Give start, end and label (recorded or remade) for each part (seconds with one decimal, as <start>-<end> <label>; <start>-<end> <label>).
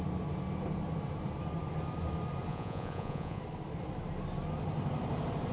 0.0-2.5 recorded; 2.5-3.4 remade; 3.4-5.5 recorded